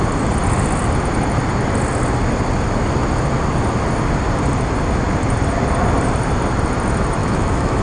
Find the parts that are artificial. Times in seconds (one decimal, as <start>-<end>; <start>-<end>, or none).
7.2-7.8